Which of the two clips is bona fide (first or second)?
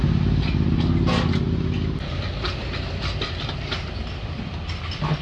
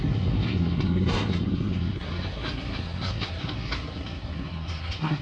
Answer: first